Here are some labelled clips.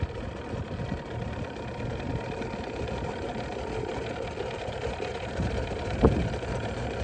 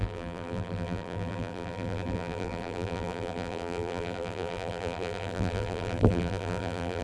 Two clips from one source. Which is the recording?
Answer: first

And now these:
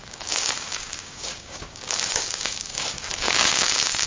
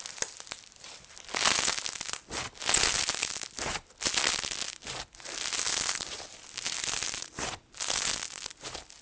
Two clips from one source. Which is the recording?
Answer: second